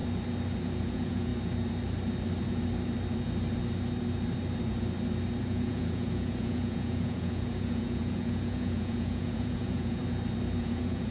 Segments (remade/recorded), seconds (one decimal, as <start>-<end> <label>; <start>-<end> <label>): 0.0-0.6 recorded; 0.6-1.3 remade; 1.3-5.4 recorded; 5.4-10.0 remade; 10.0-10.6 recorded; 10.6-11.1 remade